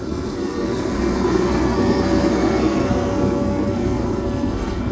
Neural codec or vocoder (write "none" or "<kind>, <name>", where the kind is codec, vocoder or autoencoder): codec, SNAC